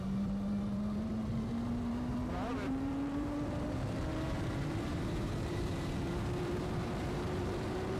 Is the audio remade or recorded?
remade